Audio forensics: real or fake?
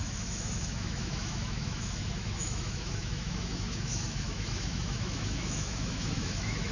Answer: fake